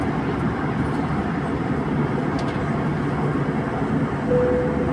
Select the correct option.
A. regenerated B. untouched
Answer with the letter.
B